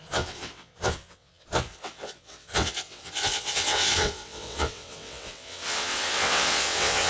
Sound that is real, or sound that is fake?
fake